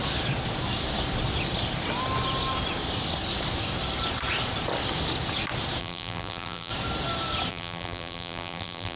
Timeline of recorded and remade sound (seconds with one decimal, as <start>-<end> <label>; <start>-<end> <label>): 0.0-5.8 recorded; 5.8-6.7 remade; 6.7-7.5 recorded; 7.5-9.0 remade